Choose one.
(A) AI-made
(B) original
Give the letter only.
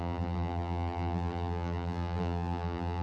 A